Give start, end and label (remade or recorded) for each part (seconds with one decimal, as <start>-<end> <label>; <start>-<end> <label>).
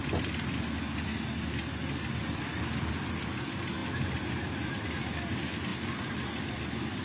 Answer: 0.0-7.0 recorded